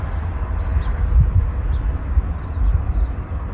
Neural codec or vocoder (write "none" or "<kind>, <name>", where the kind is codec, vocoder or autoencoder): none